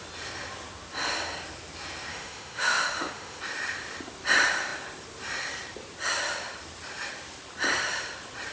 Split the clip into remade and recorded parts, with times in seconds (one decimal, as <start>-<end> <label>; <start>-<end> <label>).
0.0-2.1 recorded; 2.1-3.4 remade; 3.4-8.5 recorded